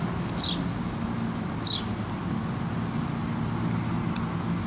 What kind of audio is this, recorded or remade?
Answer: recorded